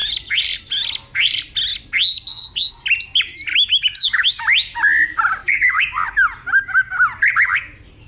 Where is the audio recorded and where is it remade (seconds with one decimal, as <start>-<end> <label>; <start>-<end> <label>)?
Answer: 0.0-3.5 recorded; 3.5-4.3 remade; 4.3-5.4 recorded; 5.4-5.9 remade; 5.9-8.1 recorded